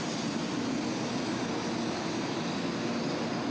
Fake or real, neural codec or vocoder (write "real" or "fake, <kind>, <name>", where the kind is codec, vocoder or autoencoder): real